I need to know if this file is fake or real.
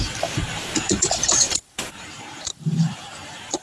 fake